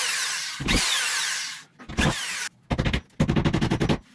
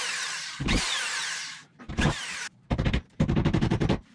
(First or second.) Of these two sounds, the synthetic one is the second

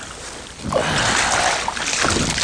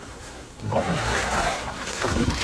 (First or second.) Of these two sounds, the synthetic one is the second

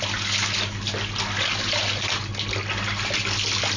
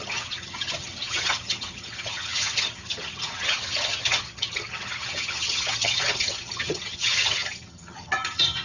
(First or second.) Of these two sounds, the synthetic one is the second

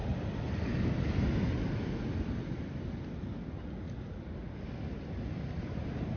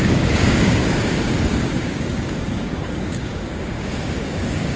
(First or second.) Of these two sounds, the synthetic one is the second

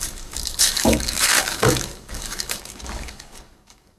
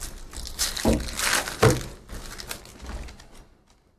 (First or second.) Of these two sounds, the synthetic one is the first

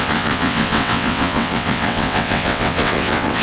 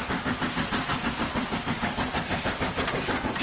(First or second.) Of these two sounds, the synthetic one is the first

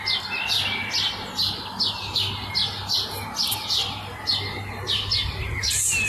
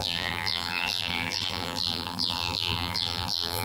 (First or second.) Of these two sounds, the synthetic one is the second